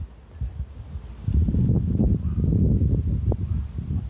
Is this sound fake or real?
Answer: real